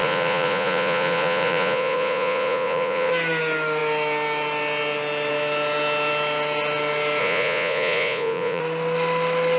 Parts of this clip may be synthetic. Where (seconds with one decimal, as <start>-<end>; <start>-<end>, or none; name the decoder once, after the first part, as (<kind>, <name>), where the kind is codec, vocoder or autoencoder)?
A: 0.0-3.1 (vocoder, Vocos); 7.2-8.6